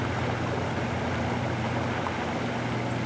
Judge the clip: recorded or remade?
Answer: recorded